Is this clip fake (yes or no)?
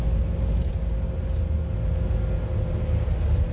no